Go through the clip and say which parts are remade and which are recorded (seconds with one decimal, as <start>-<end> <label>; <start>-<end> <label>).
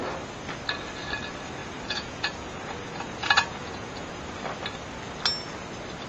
0.0-1.6 recorded; 1.6-4.1 remade; 4.1-6.1 recorded